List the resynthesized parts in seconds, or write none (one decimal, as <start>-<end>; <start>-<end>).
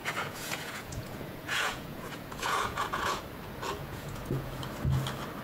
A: 0.0-3.2; 3.8-4.6